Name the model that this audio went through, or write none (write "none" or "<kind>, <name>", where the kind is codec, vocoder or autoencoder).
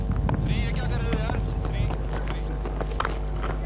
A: none